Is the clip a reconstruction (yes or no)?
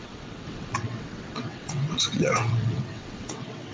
yes